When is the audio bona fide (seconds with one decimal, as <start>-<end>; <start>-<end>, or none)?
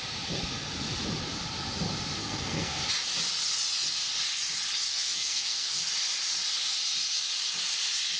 0.0-2.2; 2.8-4.9; 5.9-8.2